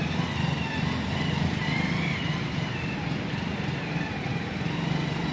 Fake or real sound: real